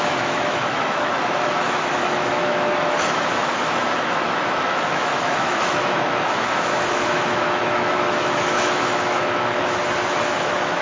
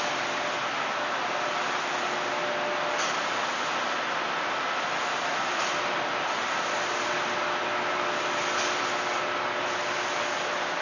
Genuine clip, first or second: second